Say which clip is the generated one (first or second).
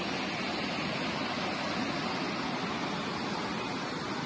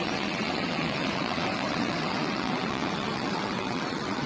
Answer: second